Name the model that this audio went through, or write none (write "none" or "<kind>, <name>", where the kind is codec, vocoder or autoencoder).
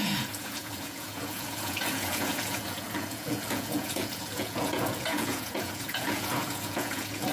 vocoder, Vocos